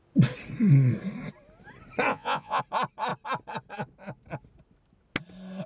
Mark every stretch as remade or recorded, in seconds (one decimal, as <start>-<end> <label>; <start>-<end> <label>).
0.0-2.1 recorded; 2.1-2.6 remade; 2.6-5.7 recorded

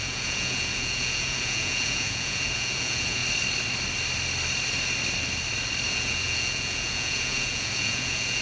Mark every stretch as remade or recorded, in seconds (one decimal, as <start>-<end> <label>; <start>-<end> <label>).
0.0-3.2 remade; 3.2-5.9 recorded; 5.9-8.4 remade

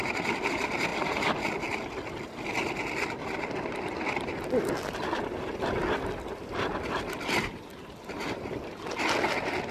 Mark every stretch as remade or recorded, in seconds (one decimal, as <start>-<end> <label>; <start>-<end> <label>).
0.0-9.7 recorded

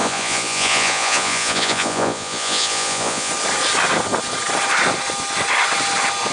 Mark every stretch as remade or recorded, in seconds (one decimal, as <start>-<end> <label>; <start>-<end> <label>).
0.0-3.3 remade; 3.3-6.3 recorded

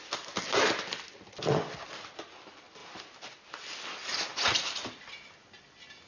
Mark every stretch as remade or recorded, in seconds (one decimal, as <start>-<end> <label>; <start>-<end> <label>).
0.0-6.1 recorded

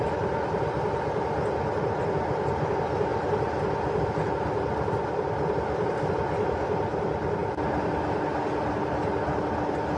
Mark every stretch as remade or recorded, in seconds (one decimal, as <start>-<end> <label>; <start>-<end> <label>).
0.0-10.0 recorded

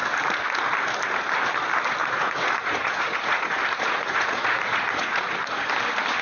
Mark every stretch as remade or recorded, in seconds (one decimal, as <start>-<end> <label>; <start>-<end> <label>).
0.0-2.0 recorded; 2.0-5.7 remade; 5.7-6.2 recorded